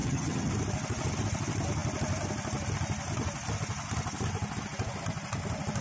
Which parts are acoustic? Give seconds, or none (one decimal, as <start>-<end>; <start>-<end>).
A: 0.5-5.8